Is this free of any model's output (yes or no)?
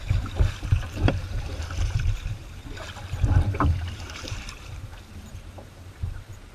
no